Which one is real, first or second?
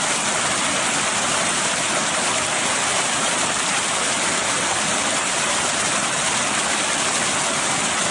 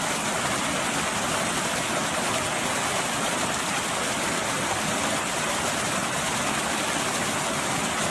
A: second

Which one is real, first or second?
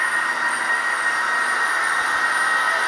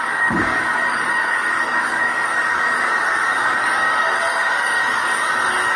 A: first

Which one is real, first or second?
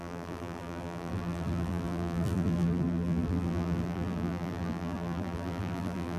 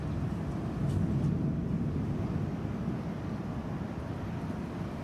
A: second